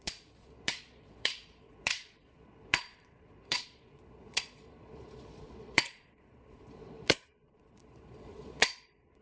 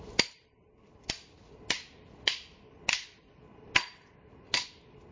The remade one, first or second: first